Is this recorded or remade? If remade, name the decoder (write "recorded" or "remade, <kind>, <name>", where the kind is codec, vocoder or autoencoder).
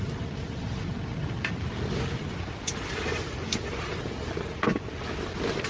recorded